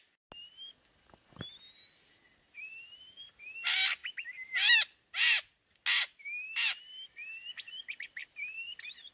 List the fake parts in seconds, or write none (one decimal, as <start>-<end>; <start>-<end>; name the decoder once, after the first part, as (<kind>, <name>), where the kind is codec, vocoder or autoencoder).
none